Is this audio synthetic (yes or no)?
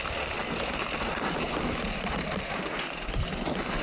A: no